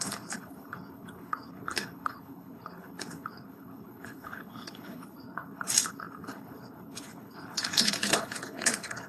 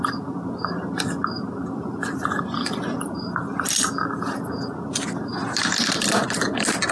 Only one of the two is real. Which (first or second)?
second